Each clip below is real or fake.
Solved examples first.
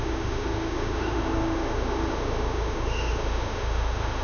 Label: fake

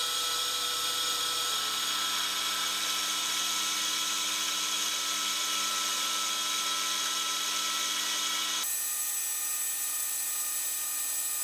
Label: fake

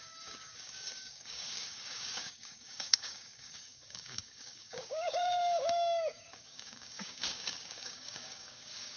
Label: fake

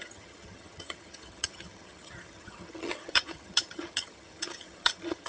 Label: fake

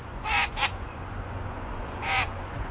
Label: fake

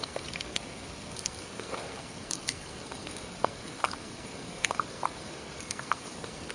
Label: fake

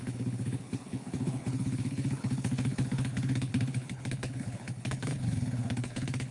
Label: fake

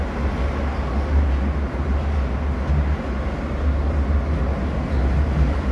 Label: real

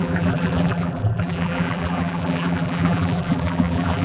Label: fake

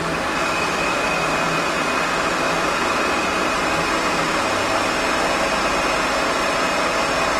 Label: real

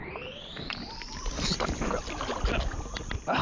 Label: fake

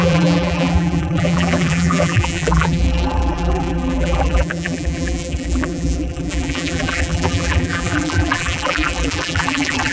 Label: fake